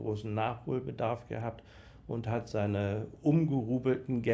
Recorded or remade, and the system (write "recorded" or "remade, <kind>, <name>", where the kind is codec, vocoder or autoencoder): recorded